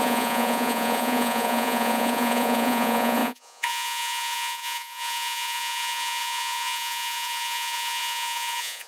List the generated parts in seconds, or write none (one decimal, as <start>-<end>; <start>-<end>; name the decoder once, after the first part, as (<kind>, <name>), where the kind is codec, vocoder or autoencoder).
0.0-8.9 (vocoder, Vocos)